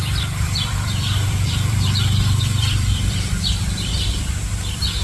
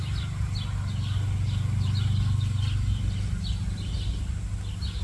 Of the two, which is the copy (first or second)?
first